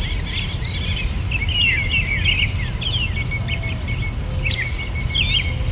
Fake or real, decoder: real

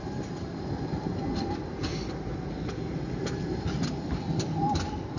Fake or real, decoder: real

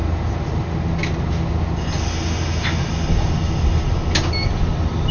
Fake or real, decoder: real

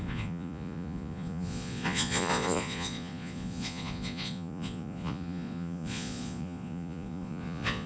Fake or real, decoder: fake, vocoder, Vocos